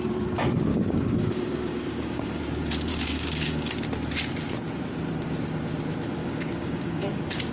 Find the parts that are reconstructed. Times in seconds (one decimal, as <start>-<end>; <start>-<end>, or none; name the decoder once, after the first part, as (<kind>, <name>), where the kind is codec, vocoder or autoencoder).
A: 0.7-2.4 (codec, DAC); 2.9-3.7; 6.2-7.5